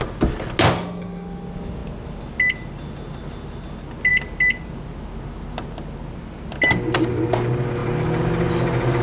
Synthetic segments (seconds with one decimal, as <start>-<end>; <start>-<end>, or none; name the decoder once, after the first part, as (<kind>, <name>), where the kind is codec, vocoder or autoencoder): none